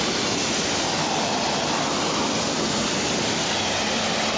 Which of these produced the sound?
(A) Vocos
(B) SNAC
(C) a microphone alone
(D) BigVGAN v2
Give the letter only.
C